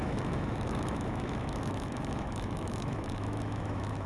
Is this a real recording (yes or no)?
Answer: no